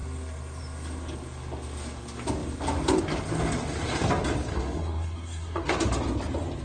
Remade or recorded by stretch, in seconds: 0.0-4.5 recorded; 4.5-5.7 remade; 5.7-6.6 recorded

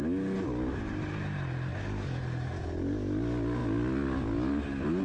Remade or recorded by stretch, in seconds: 0.0-5.0 recorded

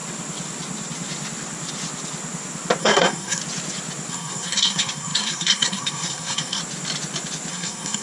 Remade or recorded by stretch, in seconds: 0.0-2.8 recorded; 2.8-3.4 remade; 3.4-4.1 recorded; 4.1-6.6 remade; 6.6-7.5 recorded; 7.5-8.0 remade